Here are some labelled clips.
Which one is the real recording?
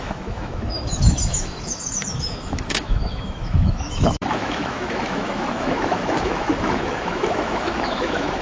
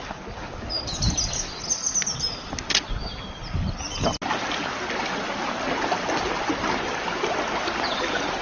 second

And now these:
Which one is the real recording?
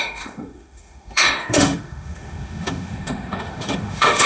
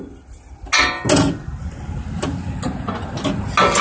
second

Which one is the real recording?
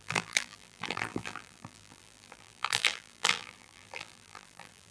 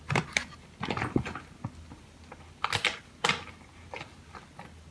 second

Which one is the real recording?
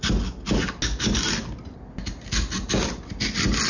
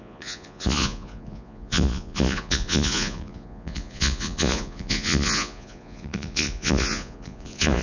first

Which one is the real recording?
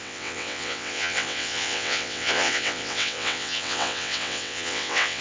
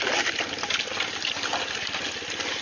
second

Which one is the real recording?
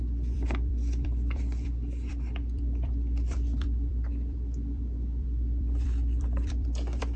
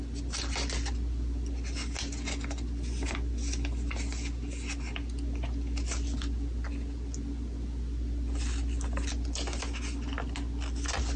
second